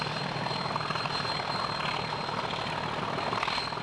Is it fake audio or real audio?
real